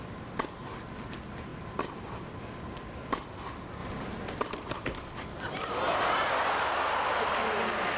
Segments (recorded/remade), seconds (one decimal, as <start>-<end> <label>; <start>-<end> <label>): 0.0-8.0 recorded